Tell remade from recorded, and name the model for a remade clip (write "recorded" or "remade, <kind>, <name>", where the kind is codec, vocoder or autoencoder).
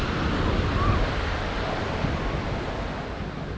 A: recorded